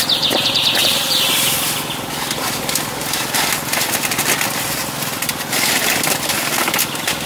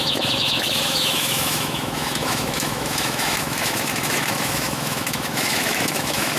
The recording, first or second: first